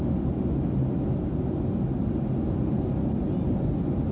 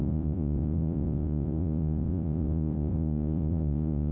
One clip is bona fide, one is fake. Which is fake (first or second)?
second